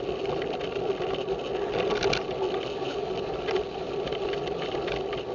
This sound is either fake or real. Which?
real